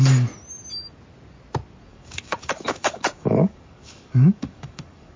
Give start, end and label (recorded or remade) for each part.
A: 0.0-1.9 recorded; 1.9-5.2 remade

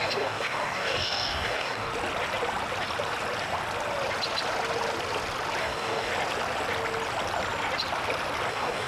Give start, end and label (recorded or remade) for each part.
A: 0.0-1.9 remade; 1.9-5.6 recorded; 5.6-6.1 remade; 6.1-8.5 recorded; 8.5-8.9 remade

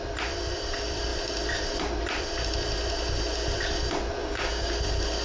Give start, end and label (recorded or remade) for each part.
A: 0.0-4.2 recorded; 4.2-4.7 remade; 4.7-5.2 recorded

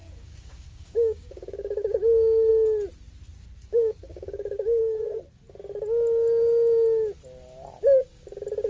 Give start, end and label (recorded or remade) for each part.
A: 0.0-2.5 remade; 2.5-3.7 recorded; 3.7-4.8 remade; 4.8-8.7 recorded

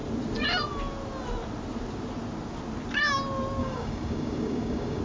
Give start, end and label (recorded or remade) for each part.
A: 0.0-3.6 recorded; 3.6-5.0 remade

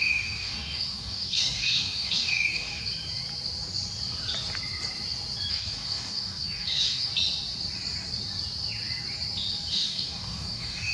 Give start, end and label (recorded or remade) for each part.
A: 0.0-2.8 remade; 2.8-5.5 recorded; 5.5-7.1 remade; 7.1-9.7 recorded; 9.7-10.9 remade